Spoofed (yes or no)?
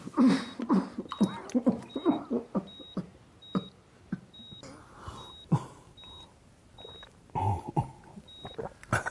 no